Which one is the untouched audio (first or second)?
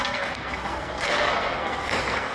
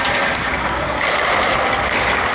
second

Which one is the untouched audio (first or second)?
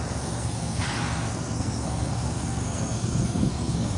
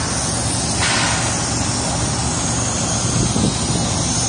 second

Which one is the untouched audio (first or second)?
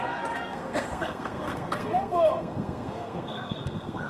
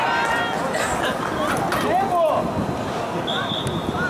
second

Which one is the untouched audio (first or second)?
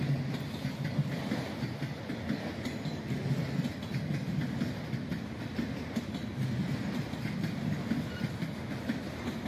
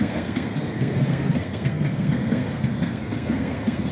first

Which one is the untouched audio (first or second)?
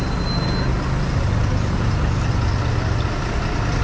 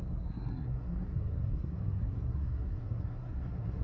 first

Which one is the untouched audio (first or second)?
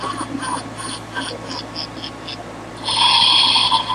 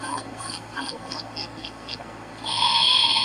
first